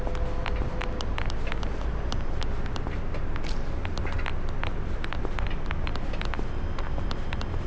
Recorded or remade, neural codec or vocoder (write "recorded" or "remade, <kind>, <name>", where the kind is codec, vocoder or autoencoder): recorded